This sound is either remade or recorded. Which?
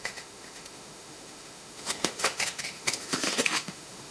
remade